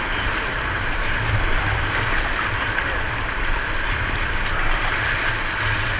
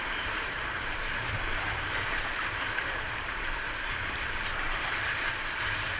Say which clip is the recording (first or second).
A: first